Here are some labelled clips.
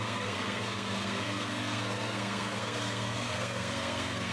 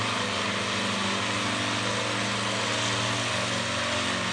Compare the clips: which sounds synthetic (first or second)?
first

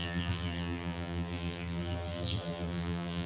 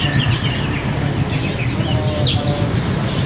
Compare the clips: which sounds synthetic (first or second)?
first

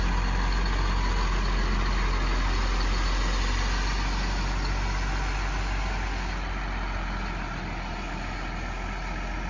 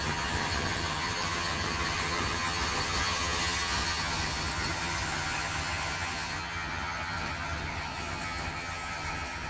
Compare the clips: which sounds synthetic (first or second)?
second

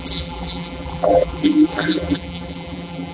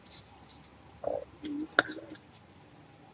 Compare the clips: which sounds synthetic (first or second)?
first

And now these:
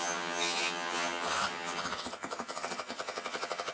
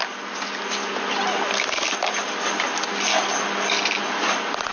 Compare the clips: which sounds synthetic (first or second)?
first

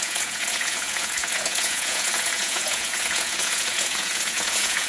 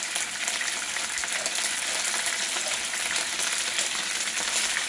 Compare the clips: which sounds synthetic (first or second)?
first